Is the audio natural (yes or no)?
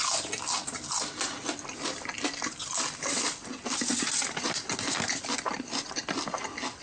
yes